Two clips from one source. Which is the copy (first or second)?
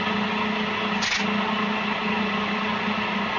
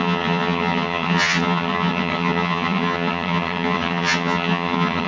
second